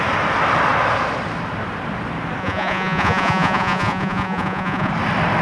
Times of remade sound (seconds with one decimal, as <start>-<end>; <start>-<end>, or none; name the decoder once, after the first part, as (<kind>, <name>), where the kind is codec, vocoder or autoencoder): 2.4-4.9 (vocoder, Vocos)